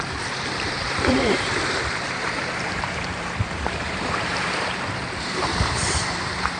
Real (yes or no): no